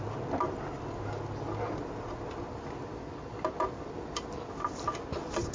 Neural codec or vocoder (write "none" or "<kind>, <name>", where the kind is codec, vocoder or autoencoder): none